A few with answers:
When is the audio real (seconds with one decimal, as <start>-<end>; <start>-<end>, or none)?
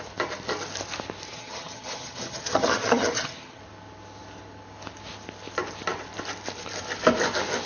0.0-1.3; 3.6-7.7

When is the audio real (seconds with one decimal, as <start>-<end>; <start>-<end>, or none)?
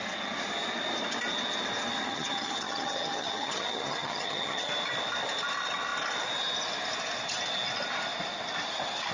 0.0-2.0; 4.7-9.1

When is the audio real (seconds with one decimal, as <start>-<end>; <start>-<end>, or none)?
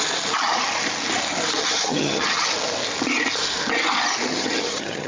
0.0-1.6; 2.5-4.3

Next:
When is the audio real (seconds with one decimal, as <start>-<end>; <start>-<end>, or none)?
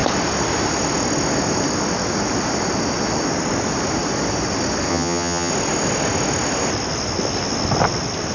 0.0-4.9; 5.5-8.3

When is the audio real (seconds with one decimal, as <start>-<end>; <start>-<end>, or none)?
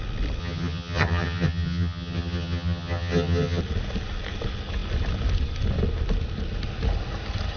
0.0-0.4; 3.6-7.6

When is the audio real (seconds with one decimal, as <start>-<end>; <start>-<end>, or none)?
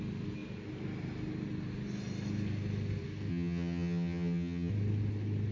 0.0-3.3; 4.7-5.5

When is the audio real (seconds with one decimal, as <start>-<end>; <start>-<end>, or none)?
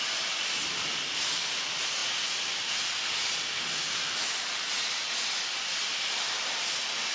0.0-7.1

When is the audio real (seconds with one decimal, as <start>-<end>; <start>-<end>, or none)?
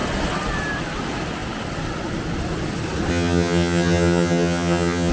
0.0-3.1